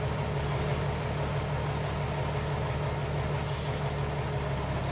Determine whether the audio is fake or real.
real